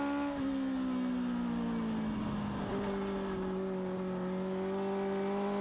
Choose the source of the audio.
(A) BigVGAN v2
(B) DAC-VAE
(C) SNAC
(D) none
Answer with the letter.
D